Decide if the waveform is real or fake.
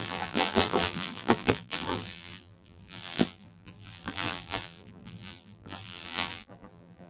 fake